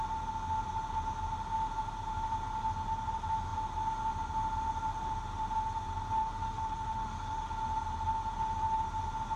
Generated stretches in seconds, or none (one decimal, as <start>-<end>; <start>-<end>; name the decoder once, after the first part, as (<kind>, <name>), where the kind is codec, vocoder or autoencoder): 6.2-7.5 (autoencoder, DAC-VAE)